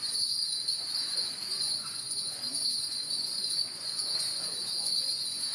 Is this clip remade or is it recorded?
remade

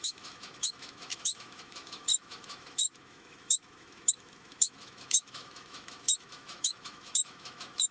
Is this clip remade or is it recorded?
remade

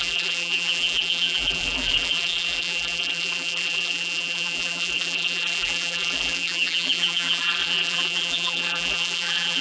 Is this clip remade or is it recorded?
remade